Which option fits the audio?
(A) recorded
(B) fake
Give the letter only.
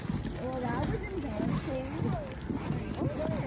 A